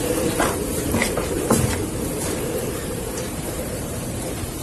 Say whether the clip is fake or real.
fake